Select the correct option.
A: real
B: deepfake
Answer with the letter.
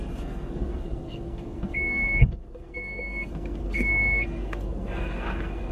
B